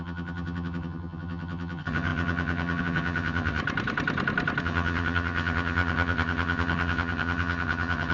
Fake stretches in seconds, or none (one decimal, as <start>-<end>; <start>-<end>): 0.0-3.6; 4.6-8.1